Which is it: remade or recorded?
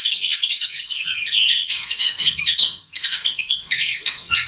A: remade